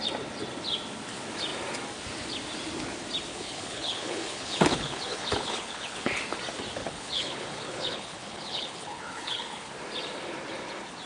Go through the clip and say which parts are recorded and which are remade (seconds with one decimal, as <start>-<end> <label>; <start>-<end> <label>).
0.0-3.3 recorded; 3.3-6.2 remade; 6.2-6.8 recorded; 6.8-9.7 remade; 9.7-11.1 recorded